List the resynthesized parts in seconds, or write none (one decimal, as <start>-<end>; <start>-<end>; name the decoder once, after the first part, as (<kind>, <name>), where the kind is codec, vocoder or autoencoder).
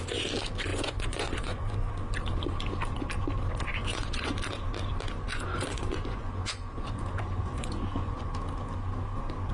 0.7-1.9 (vocoder, Vocos); 3.7-4.3; 5.3-8.3